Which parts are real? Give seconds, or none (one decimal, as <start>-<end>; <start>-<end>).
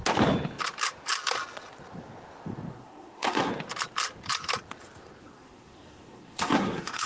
0.0-2.7; 3.5-5.2